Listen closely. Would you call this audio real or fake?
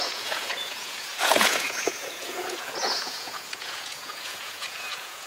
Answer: fake